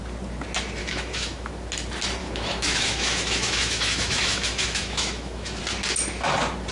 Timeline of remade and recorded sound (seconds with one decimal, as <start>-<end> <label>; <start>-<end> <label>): 0.0-0.8 recorded; 0.8-1.5 remade; 1.5-2.2 recorded; 2.2-5.6 remade; 5.6-6.7 recorded